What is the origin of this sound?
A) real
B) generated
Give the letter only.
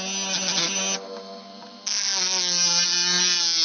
A